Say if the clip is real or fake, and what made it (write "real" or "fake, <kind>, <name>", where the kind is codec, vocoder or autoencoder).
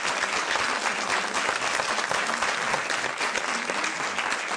real